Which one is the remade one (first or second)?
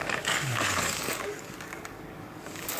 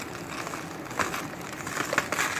first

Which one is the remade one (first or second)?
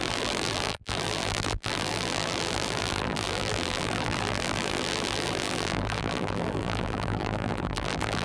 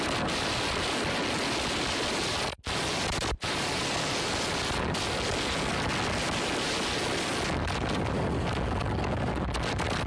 first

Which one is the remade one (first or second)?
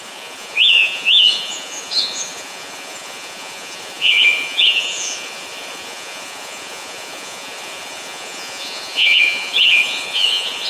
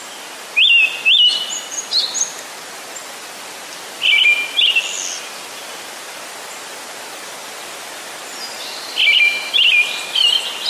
first